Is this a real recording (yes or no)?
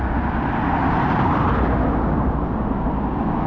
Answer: yes